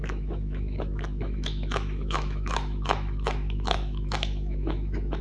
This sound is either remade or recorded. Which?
remade